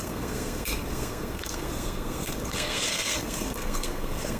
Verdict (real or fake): fake